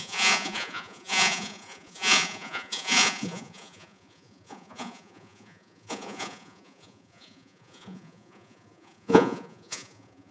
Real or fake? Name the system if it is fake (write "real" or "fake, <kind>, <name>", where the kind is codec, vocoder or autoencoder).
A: fake, vocoder, Vocos